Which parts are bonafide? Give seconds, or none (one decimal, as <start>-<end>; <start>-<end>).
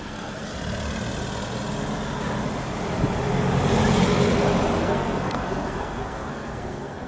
0.5-4.8